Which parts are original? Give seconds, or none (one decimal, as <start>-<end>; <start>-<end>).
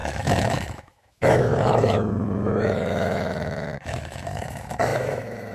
none